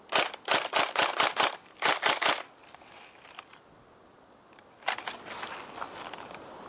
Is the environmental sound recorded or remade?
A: recorded